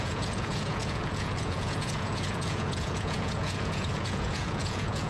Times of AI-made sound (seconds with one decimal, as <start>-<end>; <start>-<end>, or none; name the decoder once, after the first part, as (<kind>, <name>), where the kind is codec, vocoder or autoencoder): 0.0-5.1 (vocoder, Vocos)

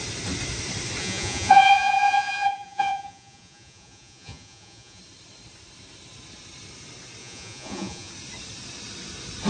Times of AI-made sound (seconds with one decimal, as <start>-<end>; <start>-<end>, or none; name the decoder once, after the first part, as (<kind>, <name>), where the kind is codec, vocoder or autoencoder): 1.0-5.0 (vocoder, Vocos); 7.2-8.1

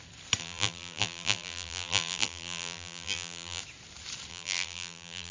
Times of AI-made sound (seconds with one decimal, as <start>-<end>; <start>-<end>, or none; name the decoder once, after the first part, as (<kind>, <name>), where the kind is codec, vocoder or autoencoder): 0.4-3.6 (vocoder, BigVGAN v2); 4.3-5.3

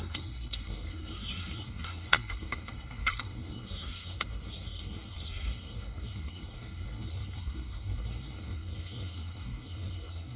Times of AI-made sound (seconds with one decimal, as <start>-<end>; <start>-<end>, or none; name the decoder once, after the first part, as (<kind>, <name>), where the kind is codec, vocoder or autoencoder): 0.0-10.4 (codec, SNAC)